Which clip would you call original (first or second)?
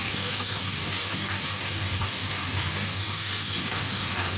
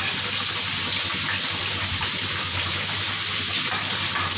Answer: second